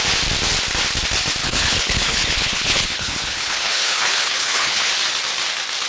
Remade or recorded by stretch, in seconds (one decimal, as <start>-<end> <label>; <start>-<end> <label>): 0.0-1.4 recorded; 1.4-4.9 remade; 4.9-5.9 recorded